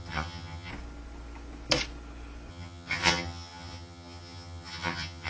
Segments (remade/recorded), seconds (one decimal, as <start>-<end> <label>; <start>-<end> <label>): 0.0-0.7 remade; 0.7-2.5 recorded; 2.5-5.3 remade